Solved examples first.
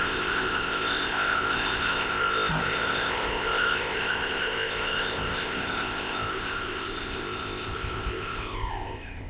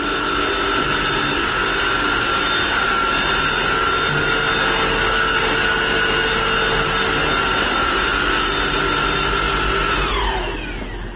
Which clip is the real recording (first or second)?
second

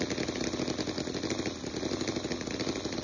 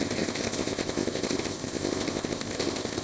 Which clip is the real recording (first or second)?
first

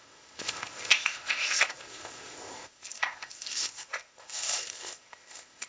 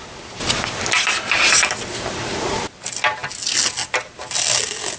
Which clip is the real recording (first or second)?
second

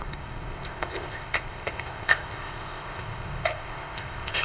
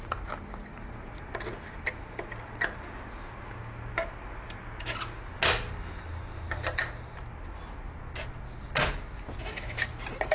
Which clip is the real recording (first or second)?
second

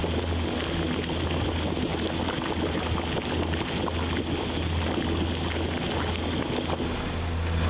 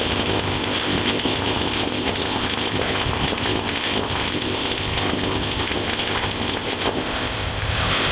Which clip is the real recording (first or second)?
first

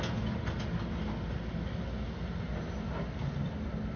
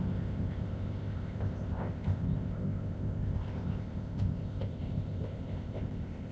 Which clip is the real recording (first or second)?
first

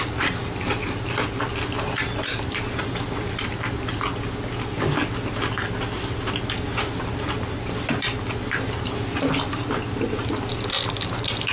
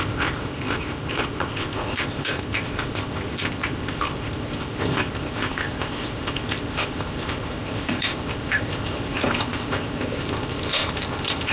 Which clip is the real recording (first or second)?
first